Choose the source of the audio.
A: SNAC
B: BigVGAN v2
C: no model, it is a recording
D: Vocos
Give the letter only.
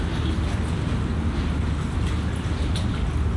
C